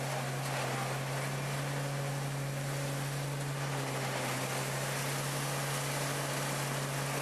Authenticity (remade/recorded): recorded